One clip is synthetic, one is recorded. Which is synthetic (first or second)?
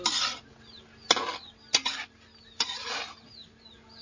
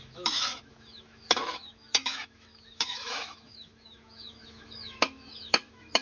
second